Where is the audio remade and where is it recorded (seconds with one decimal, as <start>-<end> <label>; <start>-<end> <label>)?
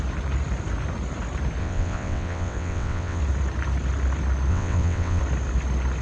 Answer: 0.0-1.6 recorded; 1.6-3.2 remade; 3.2-4.5 recorded; 4.5-5.2 remade; 5.2-6.0 recorded